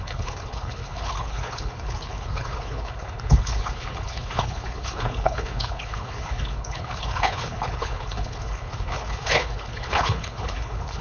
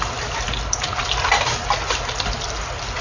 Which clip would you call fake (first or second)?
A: first